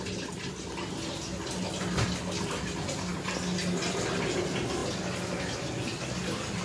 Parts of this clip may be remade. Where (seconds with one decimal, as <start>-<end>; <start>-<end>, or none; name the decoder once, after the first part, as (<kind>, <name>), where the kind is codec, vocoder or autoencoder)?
none